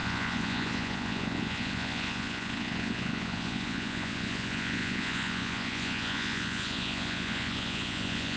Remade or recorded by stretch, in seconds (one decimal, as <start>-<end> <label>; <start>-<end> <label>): 0.0-8.4 remade